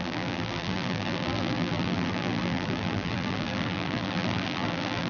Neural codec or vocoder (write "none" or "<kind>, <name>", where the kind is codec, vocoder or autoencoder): vocoder, BigVGAN v2